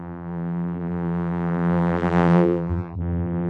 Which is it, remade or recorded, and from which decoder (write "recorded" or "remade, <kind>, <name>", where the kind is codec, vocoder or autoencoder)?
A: remade, vocoder, BigVGAN v2